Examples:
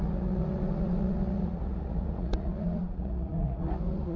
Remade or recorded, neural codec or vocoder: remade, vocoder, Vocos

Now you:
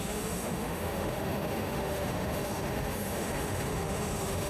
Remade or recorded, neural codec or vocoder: remade, autoencoder, DAC-VAE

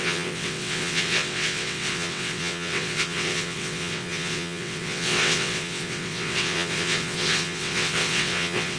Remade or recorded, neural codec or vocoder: remade, vocoder, WaveNeXt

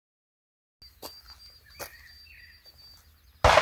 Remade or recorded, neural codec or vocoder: recorded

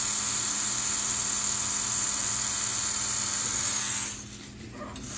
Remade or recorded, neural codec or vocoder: recorded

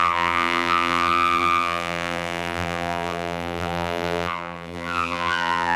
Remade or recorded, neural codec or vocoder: remade, vocoder, BigVGAN v2